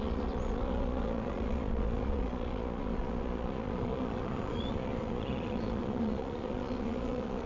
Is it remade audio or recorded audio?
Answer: remade